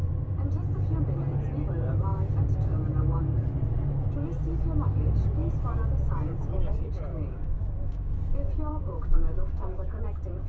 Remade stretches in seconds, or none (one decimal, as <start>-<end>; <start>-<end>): 7.1-8.2; 8.7-10.0

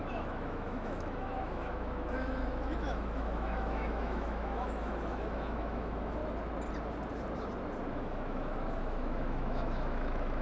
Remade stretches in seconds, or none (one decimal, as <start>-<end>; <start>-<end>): 0.0-6.2; 7.9-10.4

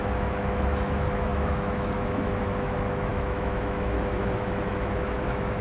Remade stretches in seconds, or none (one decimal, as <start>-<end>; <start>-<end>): 0.0-5.6